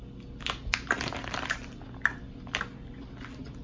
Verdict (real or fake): real